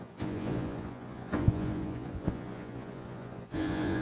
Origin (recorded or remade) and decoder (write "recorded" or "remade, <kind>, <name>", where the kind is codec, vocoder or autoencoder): remade, vocoder, Vocos